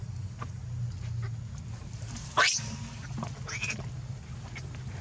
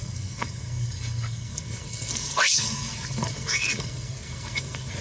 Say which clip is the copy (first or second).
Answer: second